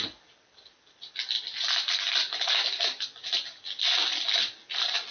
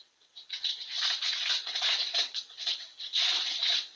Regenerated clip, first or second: second